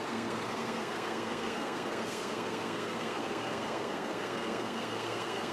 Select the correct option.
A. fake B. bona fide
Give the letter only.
A